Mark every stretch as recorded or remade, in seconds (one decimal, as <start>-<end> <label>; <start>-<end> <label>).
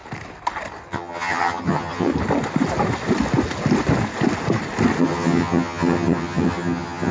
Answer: 0.0-0.9 recorded; 0.9-2.1 remade; 2.1-5.0 recorded; 5.0-7.1 remade